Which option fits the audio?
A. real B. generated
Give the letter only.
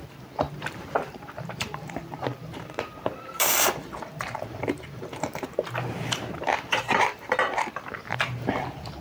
B